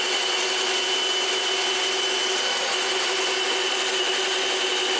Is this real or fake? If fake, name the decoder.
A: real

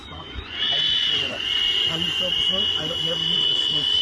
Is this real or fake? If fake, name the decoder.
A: fake, vocoder, Vocos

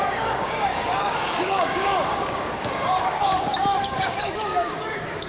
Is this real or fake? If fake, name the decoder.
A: fake, codec, DAC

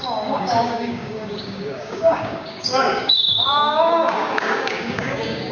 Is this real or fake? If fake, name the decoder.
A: fake, codec, DAC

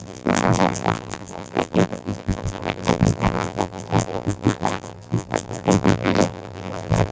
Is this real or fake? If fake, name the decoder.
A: fake, vocoder, BigVGAN v2